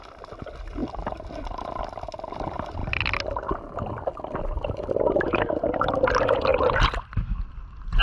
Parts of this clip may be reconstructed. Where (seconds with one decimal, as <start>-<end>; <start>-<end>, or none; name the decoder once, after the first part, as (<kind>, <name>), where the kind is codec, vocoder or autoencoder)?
none